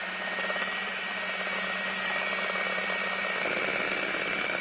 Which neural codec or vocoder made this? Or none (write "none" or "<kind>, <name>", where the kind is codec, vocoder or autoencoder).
none